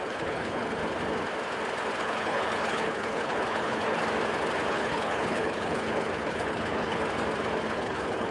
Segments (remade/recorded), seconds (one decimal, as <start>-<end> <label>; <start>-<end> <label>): 0.0-0.8 remade; 0.8-2.0 recorded; 2.0-4.0 remade; 4.0-4.7 recorded; 4.7-7.0 remade; 7.0-7.7 recorded; 7.7-8.3 remade